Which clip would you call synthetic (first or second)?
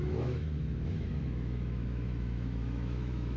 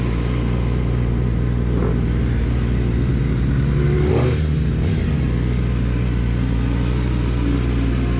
first